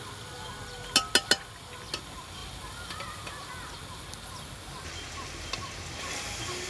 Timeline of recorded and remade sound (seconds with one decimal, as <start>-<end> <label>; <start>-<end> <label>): 0.0-6.7 recorded